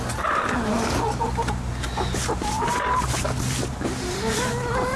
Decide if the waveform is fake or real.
real